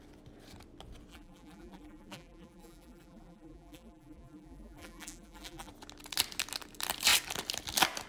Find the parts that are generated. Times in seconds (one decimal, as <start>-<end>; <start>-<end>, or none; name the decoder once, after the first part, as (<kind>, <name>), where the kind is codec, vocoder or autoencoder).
1.1-5.7 (vocoder, BigVGAN v2)